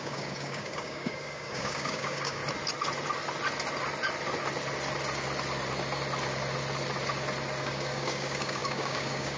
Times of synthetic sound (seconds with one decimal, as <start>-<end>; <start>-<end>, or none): 0.0-2.4; 7.6-9.4